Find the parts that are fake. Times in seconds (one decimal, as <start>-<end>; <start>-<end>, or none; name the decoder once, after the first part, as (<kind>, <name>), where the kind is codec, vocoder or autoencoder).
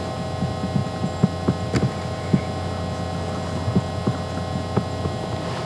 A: none